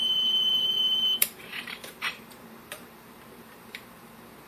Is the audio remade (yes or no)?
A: yes